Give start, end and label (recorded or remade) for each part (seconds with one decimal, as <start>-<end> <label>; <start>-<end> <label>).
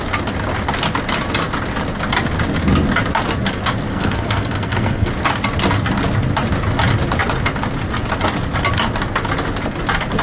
0.0-3.9 recorded; 3.9-5.1 remade; 5.1-10.2 recorded